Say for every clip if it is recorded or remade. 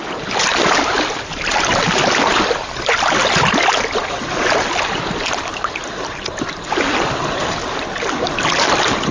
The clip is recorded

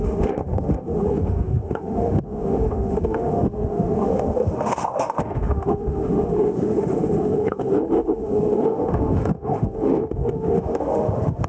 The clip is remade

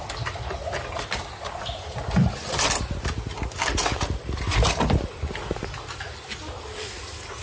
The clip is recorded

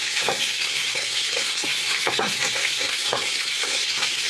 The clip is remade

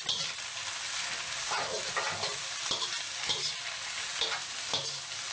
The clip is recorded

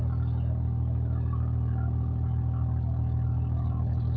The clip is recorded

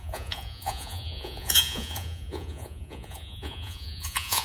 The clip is remade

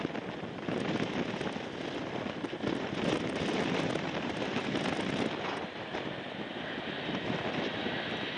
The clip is recorded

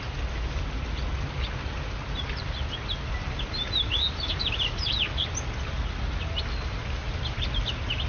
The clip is recorded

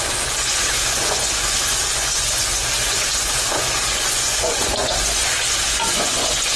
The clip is remade